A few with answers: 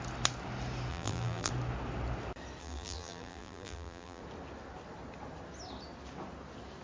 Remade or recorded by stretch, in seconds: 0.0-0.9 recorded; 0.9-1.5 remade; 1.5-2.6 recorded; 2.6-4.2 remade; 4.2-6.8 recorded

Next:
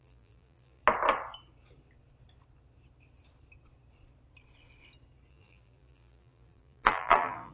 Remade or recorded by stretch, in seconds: 0.0-0.8 remade; 0.8-5.3 recorded; 5.3-7.5 remade

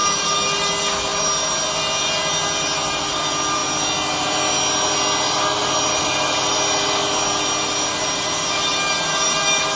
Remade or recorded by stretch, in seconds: 0.0-0.7 remade; 0.7-9.8 recorded